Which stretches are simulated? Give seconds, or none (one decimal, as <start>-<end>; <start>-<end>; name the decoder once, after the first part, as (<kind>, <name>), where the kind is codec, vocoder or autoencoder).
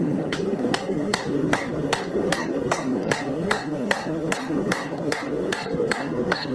0.0-6.5 (codec, SNAC)